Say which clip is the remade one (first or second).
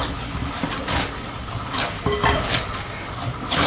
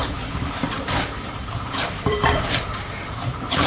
second